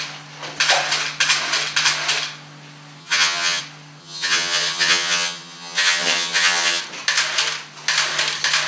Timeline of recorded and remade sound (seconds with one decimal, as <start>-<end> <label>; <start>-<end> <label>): 0.0-3.0 recorded; 3.0-3.6 remade; 3.6-4.0 recorded; 4.0-6.8 remade; 6.8-8.7 recorded